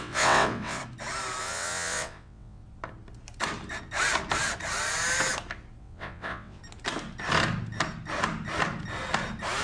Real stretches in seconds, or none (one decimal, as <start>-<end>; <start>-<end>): 0.8-1.4; 2.6-5.8; 6.6-9.6